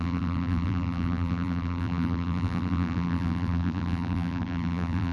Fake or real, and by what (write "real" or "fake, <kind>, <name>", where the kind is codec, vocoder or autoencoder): fake, vocoder, BigVGAN v2